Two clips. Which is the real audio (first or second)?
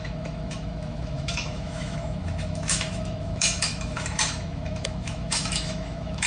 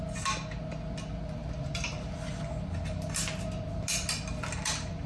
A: second